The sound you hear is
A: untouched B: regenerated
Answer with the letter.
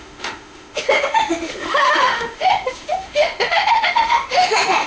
B